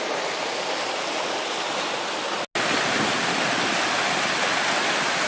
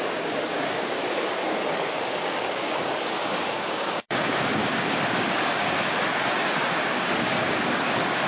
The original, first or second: first